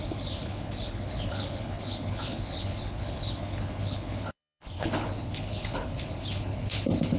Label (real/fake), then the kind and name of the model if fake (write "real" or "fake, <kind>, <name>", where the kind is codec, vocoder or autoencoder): fake, codec, HILCodec